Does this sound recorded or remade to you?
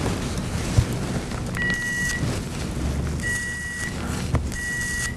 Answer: recorded